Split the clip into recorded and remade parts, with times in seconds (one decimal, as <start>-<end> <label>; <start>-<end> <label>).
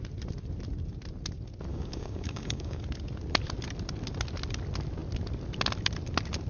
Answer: 0.0-1.7 recorded; 1.7-2.8 remade; 2.8-6.5 recorded